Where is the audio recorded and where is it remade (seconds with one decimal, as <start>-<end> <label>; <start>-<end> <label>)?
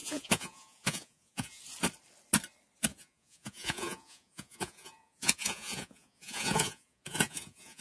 0.0-1.6 remade; 1.6-2.9 recorded; 2.9-7.8 remade